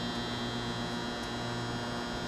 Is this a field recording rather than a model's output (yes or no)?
yes